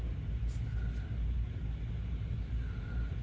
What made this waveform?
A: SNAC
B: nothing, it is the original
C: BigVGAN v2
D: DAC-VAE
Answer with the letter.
B